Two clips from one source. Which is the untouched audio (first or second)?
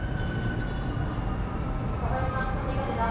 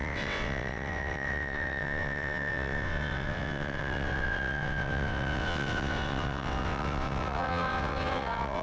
first